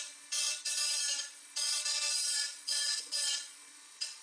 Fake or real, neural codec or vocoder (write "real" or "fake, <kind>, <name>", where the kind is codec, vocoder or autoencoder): fake, vocoder, Vocos